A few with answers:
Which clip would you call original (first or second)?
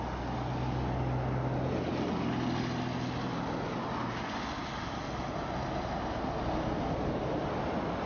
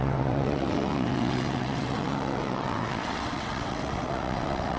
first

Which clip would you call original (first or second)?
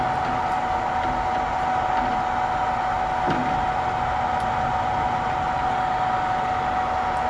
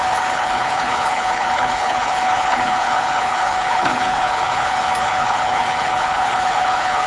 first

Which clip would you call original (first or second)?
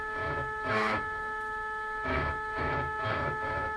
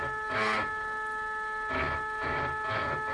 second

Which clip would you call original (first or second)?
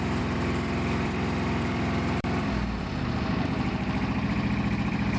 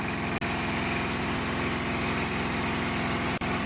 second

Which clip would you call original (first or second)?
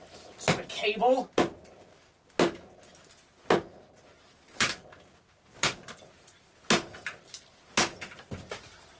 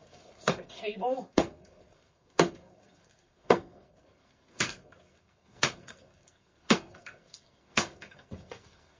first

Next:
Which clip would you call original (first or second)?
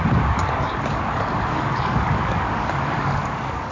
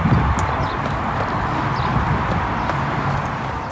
second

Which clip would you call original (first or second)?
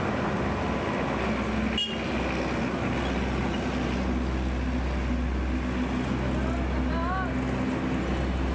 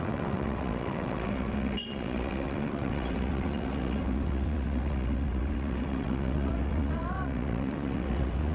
first